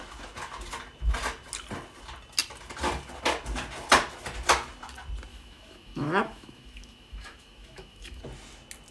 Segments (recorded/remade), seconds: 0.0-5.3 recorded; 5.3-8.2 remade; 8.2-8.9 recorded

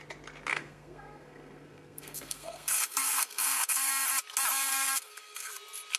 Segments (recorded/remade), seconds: 0.0-0.5 recorded; 0.5-3.9 remade; 3.9-4.7 recorded; 4.7-5.5 remade; 5.5-6.0 recorded